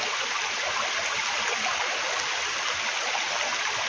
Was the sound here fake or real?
real